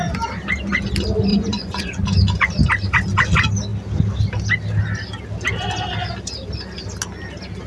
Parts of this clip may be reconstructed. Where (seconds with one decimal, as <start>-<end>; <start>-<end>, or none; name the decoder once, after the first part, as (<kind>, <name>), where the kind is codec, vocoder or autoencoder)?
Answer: 1.3-2.0 (vocoder, Vocos)